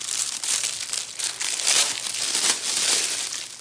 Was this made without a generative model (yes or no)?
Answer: no